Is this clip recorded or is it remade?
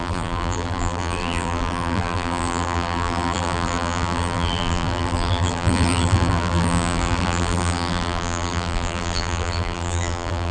remade